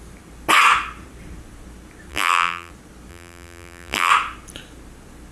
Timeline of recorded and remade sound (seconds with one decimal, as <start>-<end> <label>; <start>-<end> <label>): 0.0-2.1 recorded; 2.1-2.7 remade; 2.7-3.1 recorded; 3.1-4.1 remade; 4.1-5.3 recorded